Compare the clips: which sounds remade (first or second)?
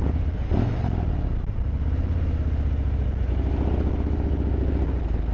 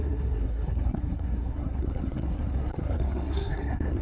second